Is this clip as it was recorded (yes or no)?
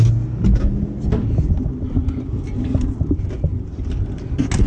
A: yes